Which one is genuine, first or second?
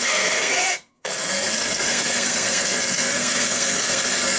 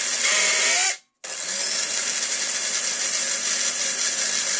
second